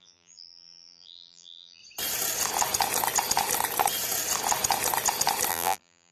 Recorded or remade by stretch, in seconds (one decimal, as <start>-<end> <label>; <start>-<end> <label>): 0.0-1.8 remade; 1.8-5.5 recorded; 5.5-6.1 remade